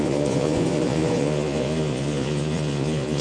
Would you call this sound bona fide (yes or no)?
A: no